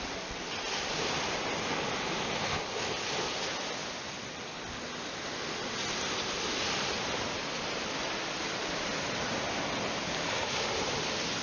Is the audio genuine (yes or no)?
yes